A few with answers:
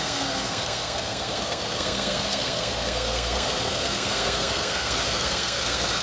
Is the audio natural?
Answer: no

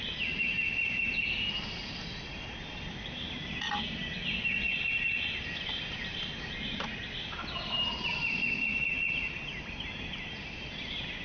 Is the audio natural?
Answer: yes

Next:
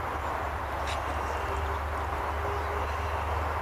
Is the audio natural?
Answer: yes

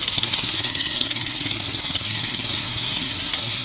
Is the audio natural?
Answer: no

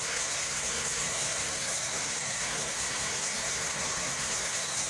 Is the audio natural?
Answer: no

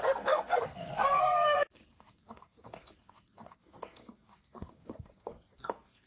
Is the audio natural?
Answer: no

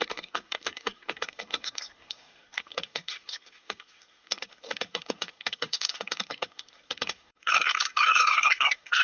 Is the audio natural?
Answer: no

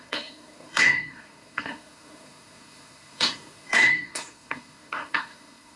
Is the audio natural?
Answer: no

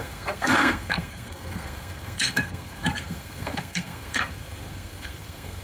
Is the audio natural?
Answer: no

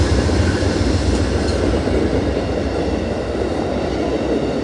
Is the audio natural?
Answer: yes